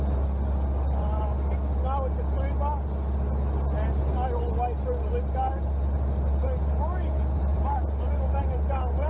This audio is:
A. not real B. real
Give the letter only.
B